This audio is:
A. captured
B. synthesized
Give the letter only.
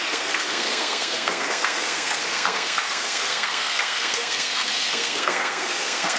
B